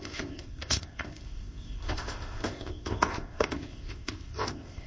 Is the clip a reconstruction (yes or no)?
yes